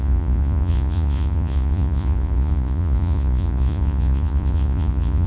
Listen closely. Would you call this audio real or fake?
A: fake